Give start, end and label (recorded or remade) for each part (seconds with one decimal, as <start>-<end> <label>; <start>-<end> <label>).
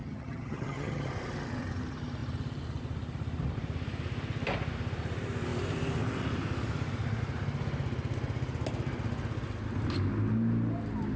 0.0-1.1 remade; 1.1-11.2 recorded